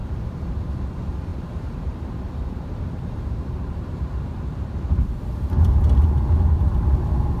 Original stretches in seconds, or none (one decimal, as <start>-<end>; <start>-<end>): 0.7-1.3; 5.7-7.4